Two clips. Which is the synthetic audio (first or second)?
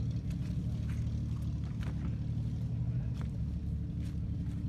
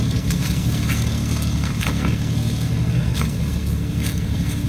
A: second